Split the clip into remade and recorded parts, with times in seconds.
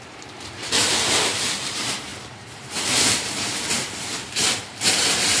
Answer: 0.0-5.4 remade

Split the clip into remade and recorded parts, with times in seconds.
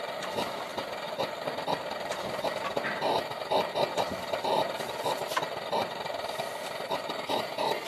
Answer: 0.0-7.9 recorded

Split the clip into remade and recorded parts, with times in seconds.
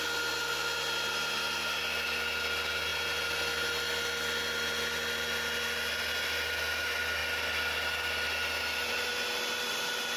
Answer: 0.0-10.2 recorded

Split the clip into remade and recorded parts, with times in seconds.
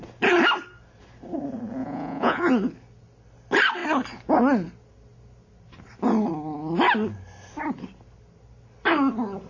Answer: 0.0-1.8 recorded; 1.8-2.5 remade; 2.5-9.5 recorded